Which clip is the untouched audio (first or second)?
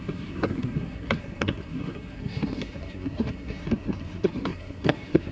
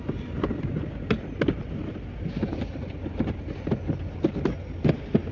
second